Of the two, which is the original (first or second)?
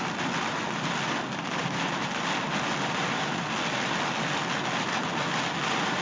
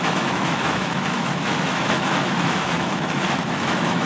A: first